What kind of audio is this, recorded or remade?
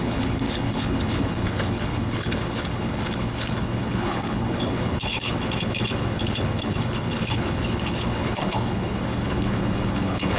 remade